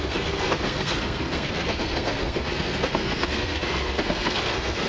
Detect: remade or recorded remade